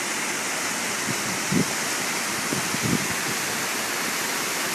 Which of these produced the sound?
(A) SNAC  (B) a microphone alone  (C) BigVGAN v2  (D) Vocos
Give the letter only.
B